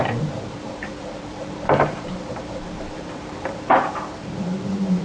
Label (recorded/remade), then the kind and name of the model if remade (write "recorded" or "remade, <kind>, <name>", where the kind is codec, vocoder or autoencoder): remade, vocoder, BigVGAN v2